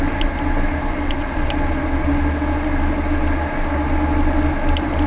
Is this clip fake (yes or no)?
no